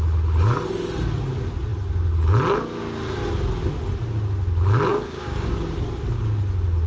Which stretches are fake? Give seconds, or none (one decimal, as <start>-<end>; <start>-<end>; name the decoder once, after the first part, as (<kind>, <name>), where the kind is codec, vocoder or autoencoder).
4.9-5.6 (codec, DAC)